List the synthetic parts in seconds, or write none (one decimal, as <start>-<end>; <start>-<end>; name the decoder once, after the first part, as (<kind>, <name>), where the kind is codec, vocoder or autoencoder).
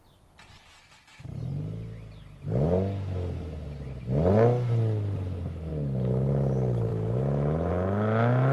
6.9-7.7 (autoencoder, DAC-VAE)